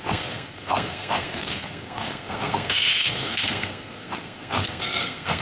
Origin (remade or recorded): remade